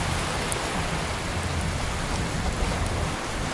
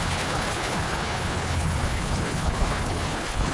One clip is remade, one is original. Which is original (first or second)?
first